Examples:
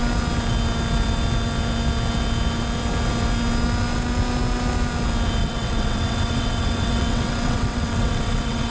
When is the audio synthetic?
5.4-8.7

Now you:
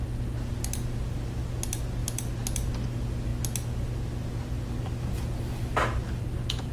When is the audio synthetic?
none